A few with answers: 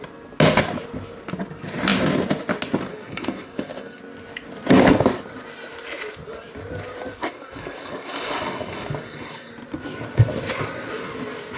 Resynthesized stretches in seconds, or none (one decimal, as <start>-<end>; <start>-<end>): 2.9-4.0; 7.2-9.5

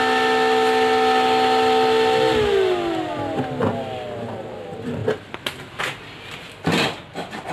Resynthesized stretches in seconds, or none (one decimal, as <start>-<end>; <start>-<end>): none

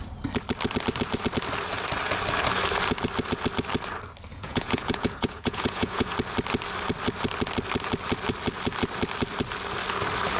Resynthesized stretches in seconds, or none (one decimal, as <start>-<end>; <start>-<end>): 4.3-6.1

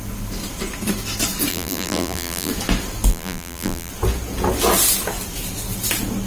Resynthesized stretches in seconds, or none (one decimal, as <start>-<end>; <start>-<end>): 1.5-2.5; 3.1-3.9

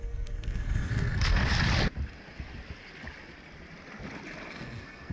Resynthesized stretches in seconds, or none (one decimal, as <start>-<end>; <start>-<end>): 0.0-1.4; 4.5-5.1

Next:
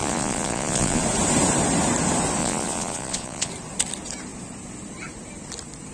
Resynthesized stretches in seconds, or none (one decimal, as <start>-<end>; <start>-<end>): 0.0-1.0; 2.4-3.5

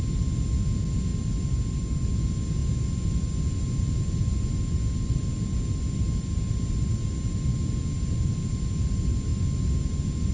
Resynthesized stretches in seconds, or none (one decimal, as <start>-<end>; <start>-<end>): none

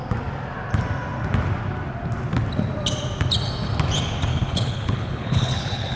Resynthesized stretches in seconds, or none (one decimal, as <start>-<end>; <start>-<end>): 4.3-6.0